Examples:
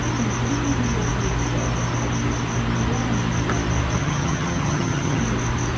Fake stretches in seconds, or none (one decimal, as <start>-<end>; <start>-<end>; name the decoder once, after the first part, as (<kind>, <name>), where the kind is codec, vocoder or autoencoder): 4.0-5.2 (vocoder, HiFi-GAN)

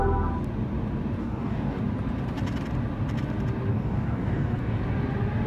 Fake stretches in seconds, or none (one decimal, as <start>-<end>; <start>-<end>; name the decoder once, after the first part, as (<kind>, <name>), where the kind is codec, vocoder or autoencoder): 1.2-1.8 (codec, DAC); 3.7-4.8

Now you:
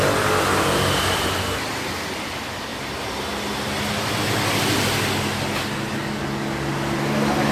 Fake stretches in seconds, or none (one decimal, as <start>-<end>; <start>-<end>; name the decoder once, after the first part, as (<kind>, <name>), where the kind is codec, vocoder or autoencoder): none